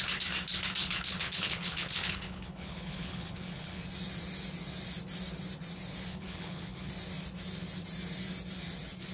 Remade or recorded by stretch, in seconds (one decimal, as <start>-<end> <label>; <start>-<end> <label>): 0.0-0.8 recorded; 0.8-3.8 remade; 3.8-6.1 recorded; 6.1-6.9 remade; 6.9-9.1 recorded